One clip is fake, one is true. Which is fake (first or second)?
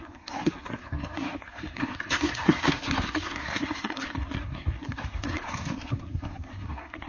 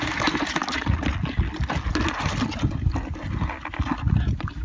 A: first